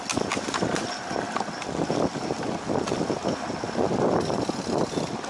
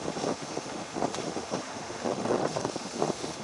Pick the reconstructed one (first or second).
second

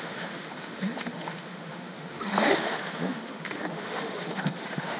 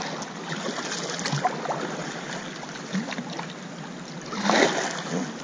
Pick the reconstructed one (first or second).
first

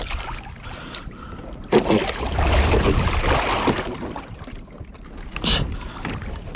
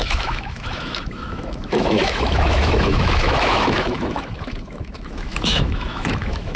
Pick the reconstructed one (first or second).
second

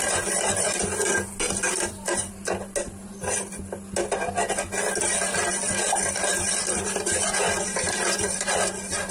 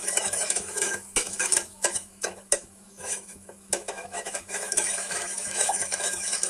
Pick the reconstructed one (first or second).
second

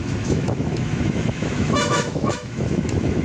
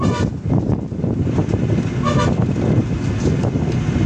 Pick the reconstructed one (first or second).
first